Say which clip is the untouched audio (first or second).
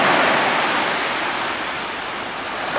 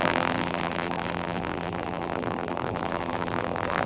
first